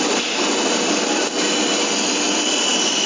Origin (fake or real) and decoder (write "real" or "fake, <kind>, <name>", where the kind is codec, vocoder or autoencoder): real